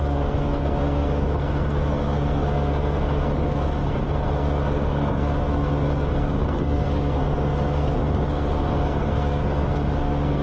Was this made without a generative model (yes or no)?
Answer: no